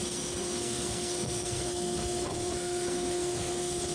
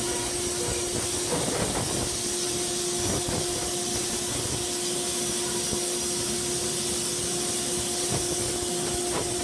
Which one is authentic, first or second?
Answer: second